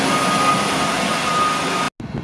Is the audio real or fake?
real